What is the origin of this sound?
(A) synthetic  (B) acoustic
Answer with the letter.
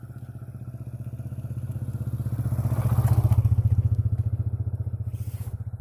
B